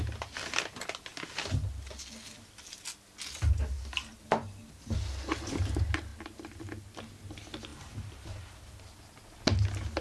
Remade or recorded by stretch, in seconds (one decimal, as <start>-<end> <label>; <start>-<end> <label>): 0.0-7.7 recorded; 7.7-9.0 remade; 9.0-10.0 recorded